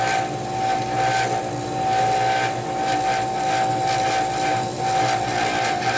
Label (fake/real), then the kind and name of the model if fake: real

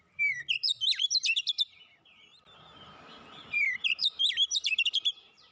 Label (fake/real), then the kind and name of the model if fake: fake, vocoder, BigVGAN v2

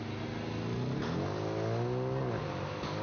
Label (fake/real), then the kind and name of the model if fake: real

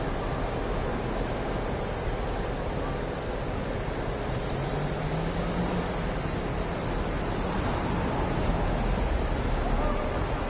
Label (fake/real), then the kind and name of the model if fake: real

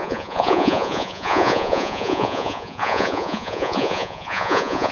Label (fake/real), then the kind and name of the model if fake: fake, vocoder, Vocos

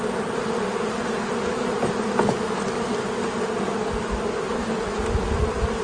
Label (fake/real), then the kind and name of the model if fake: real